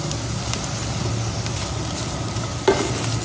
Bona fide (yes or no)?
yes